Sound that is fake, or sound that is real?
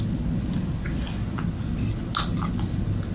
real